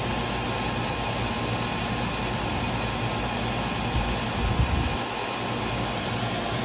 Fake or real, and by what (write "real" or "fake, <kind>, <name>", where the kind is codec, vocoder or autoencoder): real